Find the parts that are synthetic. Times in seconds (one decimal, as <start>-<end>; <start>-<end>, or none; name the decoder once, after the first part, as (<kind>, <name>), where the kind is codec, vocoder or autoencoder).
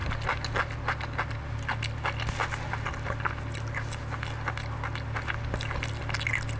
none